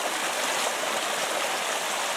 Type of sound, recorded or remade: recorded